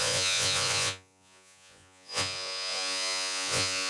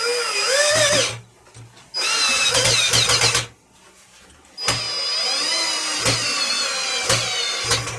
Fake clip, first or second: first